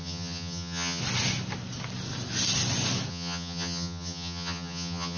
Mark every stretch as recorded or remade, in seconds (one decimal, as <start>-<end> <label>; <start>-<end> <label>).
0.0-1.0 remade; 1.0-3.1 recorded; 3.1-5.2 remade